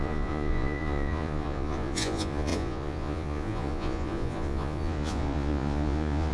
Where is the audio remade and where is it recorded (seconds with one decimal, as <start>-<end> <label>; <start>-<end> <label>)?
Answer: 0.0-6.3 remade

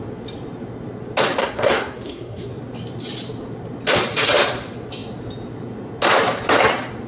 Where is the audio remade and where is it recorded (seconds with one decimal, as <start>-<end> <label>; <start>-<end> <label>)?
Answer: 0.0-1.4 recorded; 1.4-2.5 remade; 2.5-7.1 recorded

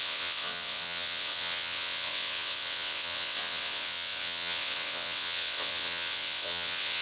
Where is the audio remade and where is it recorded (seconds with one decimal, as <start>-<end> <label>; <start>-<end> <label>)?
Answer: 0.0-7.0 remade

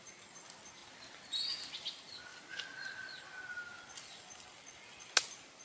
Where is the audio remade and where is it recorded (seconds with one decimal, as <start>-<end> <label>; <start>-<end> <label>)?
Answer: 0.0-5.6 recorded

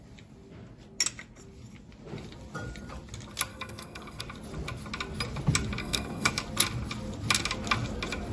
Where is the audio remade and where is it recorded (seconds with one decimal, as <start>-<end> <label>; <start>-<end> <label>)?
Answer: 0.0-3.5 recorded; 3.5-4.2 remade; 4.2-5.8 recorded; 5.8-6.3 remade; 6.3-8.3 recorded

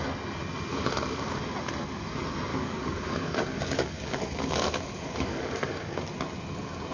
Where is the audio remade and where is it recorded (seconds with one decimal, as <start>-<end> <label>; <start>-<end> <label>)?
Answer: 0.0-0.7 recorded; 0.7-1.4 remade; 1.4-2.5 recorded; 2.5-6.1 remade; 6.1-6.9 recorded

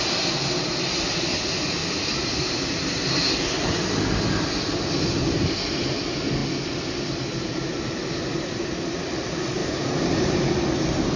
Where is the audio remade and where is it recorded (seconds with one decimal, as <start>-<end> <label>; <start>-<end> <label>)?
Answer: 0.0-1.8 recorded; 1.8-2.7 remade; 2.7-9.6 recorded; 9.6-10.5 remade; 10.5-11.2 recorded

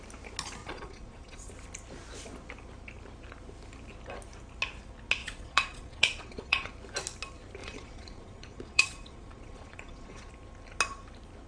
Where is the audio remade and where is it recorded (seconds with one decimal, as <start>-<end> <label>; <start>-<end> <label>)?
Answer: 0.0-0.6 recorded; 0.6-1.5 remade; 1.5-5.2 recorded; 5.2-6.7 remade; 6.7-7.6 recorded; 7.6-10.3 remade; 10.3-11.5 recorded